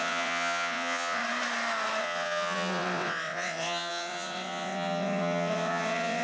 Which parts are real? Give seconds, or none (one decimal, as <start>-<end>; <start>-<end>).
1.2-2.0